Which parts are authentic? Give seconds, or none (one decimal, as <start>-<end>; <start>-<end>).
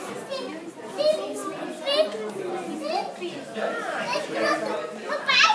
0.0-5.5